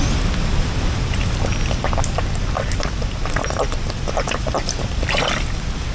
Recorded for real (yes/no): yes